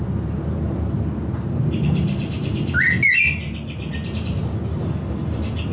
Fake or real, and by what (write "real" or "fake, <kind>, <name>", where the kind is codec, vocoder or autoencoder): real